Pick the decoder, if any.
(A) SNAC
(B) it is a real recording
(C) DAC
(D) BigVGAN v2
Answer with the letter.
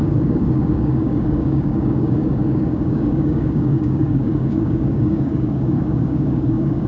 C